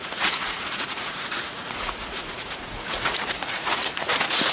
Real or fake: fake